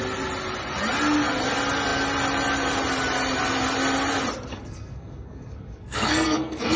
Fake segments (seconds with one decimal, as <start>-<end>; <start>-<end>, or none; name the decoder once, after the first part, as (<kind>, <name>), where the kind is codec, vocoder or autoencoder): 4.5-6.8 (codec, SNAC)